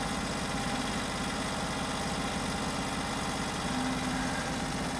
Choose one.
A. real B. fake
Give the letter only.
A